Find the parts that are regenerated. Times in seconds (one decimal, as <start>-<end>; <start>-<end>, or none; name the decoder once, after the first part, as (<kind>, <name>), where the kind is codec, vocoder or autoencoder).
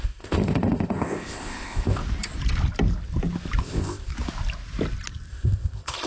0.0-2.0 (codec, ZipCodec); 3.6-4.1; 5.3-6.1